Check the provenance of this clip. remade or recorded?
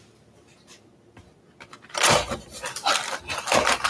recorded